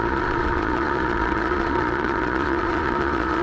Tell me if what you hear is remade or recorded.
remade